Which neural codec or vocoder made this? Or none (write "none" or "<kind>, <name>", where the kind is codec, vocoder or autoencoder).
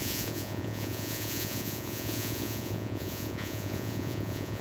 vocoder, Vocos